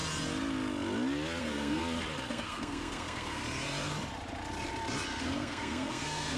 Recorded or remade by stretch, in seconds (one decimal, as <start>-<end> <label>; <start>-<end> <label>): 0.0-1.4 recorded; 1.4-1.8 remade; 1.8-2.3 recorded; 2.3-3.4 remade; 3.4-5.2 recorded; 5.2-6.4 remade